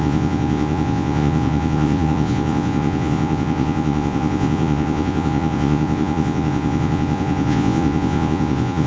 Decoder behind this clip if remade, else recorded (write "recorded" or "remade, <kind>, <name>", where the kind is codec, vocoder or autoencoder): remade, vocoder, Vocos